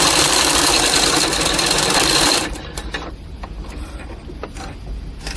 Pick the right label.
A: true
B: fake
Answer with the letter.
A